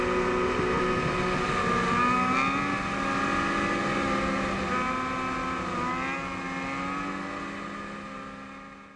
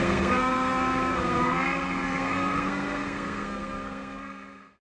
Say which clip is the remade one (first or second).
second